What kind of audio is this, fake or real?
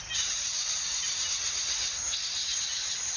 real